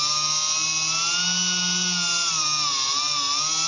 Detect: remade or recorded recorded